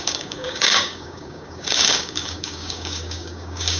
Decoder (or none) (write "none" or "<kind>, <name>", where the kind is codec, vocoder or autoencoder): codec, DAC